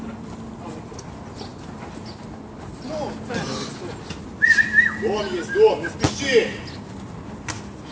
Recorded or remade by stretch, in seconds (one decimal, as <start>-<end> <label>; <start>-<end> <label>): 0.0-7.9 recorded